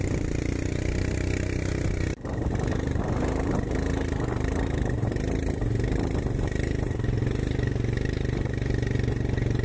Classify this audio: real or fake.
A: real